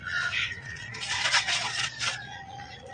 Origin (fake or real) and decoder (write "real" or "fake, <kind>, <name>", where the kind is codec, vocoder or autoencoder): fake, vocoder, Vocos